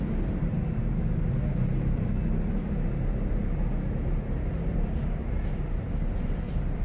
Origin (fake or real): real